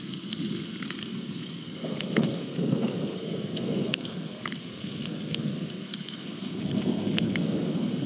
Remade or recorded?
remade